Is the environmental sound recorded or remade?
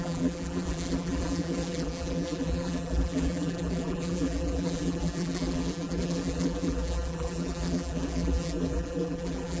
remade